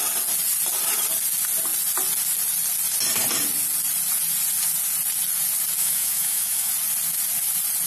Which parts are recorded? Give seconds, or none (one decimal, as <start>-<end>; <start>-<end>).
0.0-5.8; 6.7-7.9

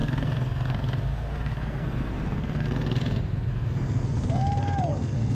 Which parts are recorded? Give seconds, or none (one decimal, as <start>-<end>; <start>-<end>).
none

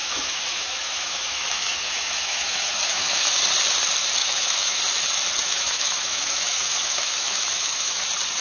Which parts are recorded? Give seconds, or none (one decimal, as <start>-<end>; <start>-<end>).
3.4-4.2; 4.8-5.4; 8.0-8.4

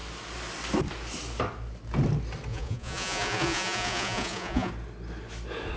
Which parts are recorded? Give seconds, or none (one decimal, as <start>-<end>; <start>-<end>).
0.0-2.5; 4.7-5.8

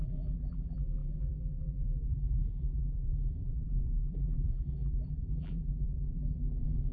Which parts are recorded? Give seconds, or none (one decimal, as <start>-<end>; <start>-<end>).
none

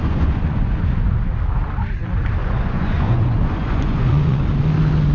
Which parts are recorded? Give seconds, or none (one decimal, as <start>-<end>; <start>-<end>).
0.9-2.4; 4.4-5.1

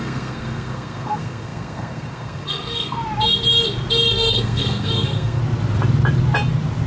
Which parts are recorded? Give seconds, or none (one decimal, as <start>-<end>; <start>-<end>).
3.0-4.1; 5.4-6.9